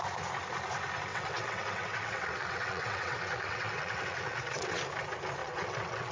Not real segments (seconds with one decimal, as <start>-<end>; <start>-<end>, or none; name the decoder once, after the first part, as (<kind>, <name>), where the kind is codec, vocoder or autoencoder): 1.1-4.8 (vocoder, WaveNeXt); 5.4-6.1